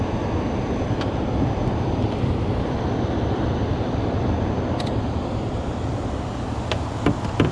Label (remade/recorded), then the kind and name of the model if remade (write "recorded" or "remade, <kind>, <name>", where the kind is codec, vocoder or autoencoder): remade, vocoder, BigVGAN v2